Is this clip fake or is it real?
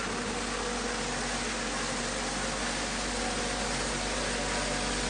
real